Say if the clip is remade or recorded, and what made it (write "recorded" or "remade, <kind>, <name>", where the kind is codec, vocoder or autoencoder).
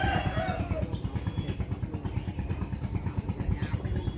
recorded